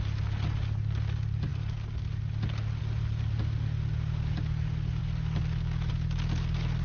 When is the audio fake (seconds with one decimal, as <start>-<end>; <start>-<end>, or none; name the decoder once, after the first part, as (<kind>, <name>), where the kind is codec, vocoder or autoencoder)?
none